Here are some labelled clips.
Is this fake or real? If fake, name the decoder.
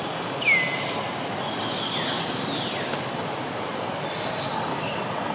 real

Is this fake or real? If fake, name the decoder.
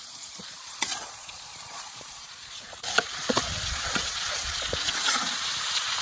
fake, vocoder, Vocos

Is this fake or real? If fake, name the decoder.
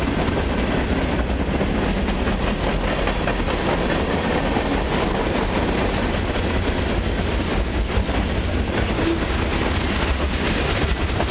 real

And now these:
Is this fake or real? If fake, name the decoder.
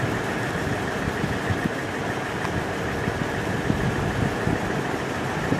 real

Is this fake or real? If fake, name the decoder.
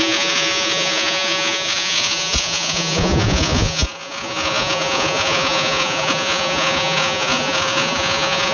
fake, vocoder, Vocos